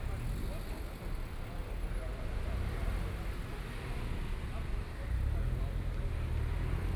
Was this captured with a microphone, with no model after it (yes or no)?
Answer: yes